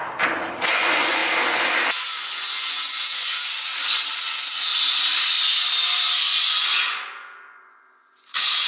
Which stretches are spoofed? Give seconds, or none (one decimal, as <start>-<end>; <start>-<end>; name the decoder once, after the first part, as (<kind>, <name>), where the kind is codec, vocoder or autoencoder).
0.7-1.2 (vocoder, Vocos); 1.9-3.7; 4.3-4.7; 6.5-8.7

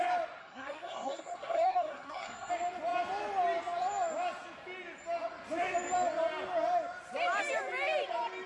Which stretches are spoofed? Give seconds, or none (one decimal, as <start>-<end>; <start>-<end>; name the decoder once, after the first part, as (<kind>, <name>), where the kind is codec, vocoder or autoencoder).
0.4-2.5 (codec, SNAC)

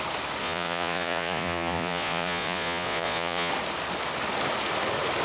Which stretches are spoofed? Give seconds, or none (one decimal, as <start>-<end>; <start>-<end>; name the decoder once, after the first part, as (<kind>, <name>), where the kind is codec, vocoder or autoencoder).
0.4-3.5 (vocoder, Vocos)